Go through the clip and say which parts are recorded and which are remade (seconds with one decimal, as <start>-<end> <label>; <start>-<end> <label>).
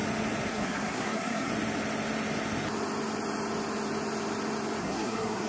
0.0-0.5 recorded; 0.5-1.5 remade; 1.5-4.8 recorded; 4.8-5.5 remade